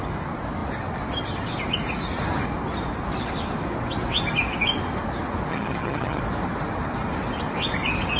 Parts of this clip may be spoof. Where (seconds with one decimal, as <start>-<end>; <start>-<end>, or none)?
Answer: 5.5-6.2